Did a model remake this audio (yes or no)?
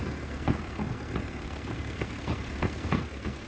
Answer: yes